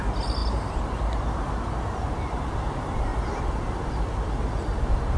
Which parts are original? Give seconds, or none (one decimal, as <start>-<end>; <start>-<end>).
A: 0.0-5.2